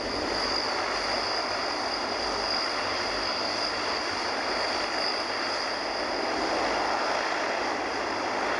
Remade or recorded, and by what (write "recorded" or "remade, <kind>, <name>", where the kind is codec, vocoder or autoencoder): recorded